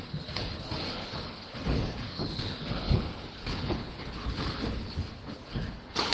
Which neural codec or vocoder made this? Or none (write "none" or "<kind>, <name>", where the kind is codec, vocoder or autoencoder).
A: codec, HILCodec